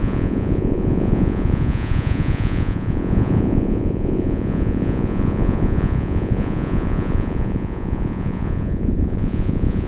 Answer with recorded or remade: remade